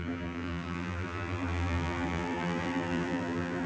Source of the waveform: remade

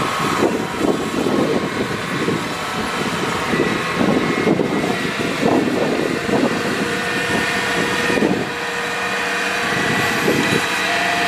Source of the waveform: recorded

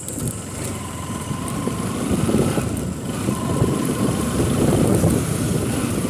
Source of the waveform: remade